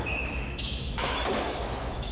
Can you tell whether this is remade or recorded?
remade